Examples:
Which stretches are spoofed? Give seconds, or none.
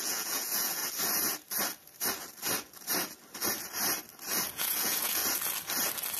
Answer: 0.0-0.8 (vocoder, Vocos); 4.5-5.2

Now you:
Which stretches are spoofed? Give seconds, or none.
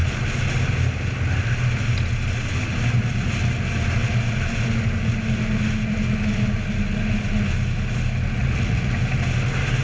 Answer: 8.4-8.9 (vocoder, Vocos)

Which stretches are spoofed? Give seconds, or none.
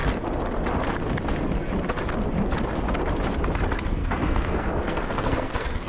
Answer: 4.0-5.9 (codec, SNAC)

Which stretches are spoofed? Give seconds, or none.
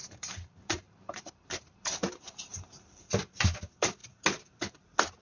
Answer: 0.0-3.1 (vocoder, BigVGAN v2)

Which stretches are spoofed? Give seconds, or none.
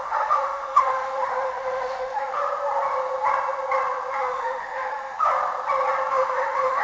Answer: 0.0-2.4 (autoencoder, DAC-VAE); 4.1-5.3; 6.1-6.8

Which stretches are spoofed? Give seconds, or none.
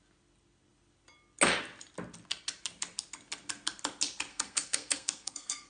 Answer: 4.3-5.7 (codec, SNAC)